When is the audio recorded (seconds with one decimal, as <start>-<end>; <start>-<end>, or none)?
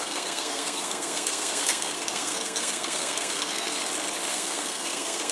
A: 3.8-4.3